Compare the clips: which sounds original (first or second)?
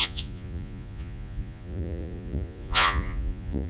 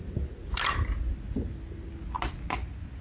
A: second